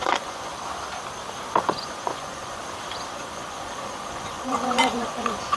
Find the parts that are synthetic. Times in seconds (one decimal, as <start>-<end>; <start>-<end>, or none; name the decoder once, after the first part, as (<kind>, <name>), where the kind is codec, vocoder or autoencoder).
0.0-0.5 (vocoder, Vocos); 1.6-2.6; 3.1-5.6